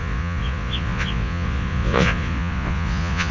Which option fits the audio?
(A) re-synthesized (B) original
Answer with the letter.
A